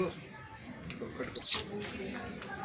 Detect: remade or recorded recorded